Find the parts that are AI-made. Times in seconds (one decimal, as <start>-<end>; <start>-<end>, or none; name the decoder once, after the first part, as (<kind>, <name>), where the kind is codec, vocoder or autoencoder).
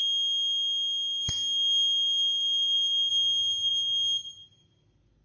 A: 0.0-3.1 (autoencoder, DAC-VAE)